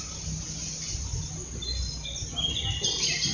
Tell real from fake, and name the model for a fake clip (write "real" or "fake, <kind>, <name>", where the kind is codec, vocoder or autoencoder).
real